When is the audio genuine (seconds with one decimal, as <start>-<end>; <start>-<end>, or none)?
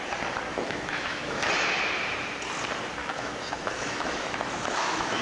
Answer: 0.0-0.5; 1.5-3.0